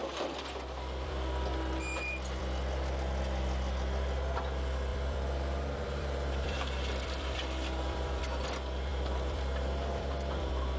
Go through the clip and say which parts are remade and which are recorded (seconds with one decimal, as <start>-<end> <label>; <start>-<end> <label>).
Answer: 0.0-2.4 remade; 2.4-4.9 recorded; 4.9-8.2 remade; 8.2-8.9 recorded; 8.9-10.8 remade